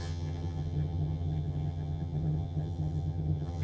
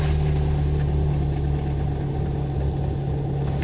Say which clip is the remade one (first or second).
first